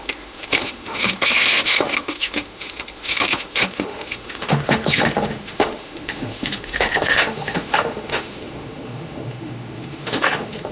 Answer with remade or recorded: remade